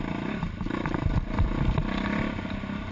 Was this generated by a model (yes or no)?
yes